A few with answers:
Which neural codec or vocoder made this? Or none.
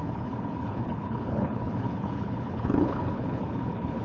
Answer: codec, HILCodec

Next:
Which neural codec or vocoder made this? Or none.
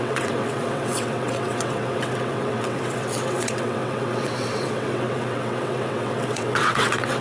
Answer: vocoder, WaveNeXt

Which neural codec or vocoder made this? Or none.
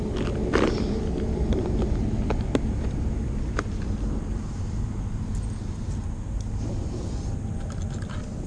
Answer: none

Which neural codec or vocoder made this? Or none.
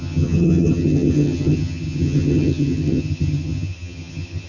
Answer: vocoder, HiFi-GAN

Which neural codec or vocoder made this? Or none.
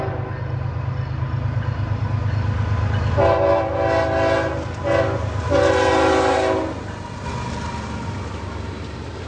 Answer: none